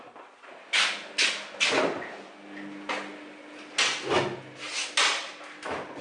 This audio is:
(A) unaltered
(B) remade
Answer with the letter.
A